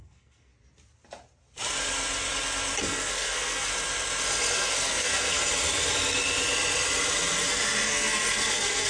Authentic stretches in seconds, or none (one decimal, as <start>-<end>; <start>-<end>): 0.5-2.8; 3.7-4.5; 5.4-7.9

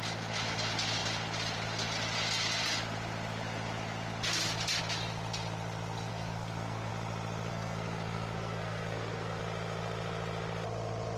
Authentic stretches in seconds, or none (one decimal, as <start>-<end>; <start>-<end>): 0.0-6.1; 6.9-7.5; 9.4-11.2

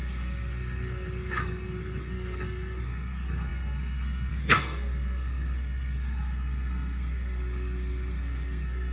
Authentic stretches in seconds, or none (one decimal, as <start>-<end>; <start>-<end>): none

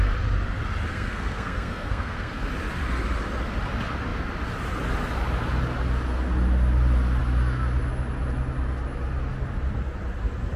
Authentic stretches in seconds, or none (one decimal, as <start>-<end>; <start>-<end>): 0.0-0.9; 2.5-10.6

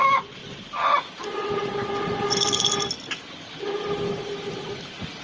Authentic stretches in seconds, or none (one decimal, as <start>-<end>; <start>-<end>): 0.0-5.2